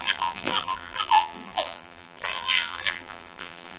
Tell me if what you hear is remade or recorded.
remade